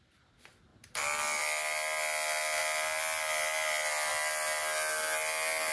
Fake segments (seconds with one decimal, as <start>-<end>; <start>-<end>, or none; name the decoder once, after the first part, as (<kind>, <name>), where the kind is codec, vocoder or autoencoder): none